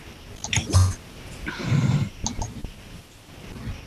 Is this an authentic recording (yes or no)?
yes